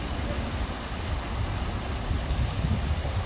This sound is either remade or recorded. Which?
recorded